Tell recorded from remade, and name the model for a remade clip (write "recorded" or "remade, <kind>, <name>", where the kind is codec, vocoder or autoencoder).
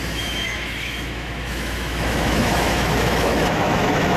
remade, autoencoder, DAC-VAE